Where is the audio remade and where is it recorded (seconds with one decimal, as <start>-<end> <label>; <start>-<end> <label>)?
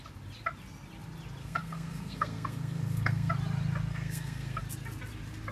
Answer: 0.0-1.4 recorded; 1.4-3.3 remade; 3.3-3.9 recorded; 3.9-4.6 remade; 4.6-5.5 recorded